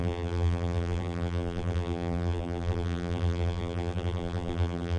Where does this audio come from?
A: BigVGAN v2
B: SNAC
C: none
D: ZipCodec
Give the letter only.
A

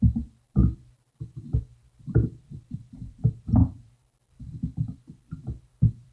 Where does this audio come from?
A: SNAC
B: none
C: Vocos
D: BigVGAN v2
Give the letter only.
D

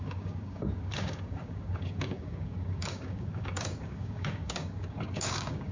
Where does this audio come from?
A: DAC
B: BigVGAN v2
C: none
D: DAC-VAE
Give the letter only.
A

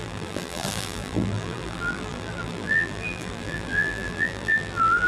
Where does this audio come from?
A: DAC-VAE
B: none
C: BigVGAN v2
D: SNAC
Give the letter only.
C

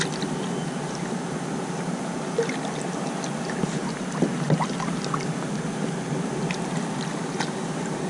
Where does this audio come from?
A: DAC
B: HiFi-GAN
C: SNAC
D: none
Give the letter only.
D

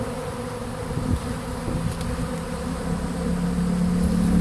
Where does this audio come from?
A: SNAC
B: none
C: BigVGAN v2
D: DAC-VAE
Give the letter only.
B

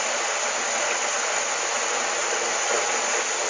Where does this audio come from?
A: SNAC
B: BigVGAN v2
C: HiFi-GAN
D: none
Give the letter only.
D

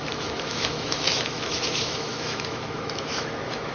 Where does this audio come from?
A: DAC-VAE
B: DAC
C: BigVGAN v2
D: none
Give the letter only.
A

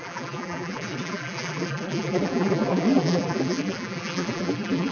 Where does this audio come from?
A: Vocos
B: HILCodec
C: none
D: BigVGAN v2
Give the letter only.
D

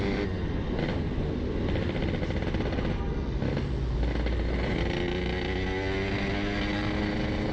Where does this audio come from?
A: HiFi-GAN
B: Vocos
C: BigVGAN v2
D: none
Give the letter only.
D